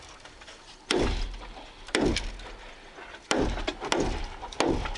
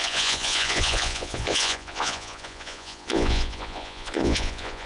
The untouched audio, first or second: first